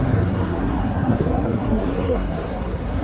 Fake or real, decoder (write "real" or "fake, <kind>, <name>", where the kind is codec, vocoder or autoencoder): fake, codec, SNAC